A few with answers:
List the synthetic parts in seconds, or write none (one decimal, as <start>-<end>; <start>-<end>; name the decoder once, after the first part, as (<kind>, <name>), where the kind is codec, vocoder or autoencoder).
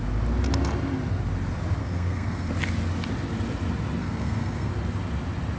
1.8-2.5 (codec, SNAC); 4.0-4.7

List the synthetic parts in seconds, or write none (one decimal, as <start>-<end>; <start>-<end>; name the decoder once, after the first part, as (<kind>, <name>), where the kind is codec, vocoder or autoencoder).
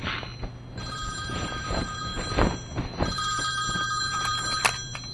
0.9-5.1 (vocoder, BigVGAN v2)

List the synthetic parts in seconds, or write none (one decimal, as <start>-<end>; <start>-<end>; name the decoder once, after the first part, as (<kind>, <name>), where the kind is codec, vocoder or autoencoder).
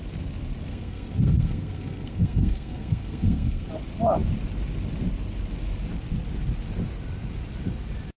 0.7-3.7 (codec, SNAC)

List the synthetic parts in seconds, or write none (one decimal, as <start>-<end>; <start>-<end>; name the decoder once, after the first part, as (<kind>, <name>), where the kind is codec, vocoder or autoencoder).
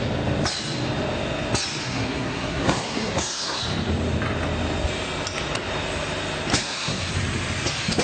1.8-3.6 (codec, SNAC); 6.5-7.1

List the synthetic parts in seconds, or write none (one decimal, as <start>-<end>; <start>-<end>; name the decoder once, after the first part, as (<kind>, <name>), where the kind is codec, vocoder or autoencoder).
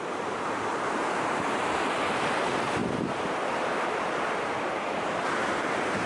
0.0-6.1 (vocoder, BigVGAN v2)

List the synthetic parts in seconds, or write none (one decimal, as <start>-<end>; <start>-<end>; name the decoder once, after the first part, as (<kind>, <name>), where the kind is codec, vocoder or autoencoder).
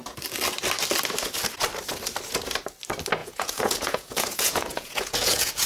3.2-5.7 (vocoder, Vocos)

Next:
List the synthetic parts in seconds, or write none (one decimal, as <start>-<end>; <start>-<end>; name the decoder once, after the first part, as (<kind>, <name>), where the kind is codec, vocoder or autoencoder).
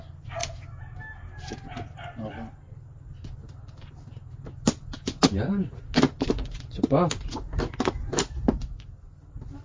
none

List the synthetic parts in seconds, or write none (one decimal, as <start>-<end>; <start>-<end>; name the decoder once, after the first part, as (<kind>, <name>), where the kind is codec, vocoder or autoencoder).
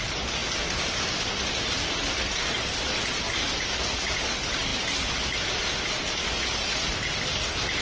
none